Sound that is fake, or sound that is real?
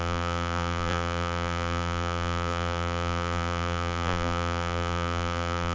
fake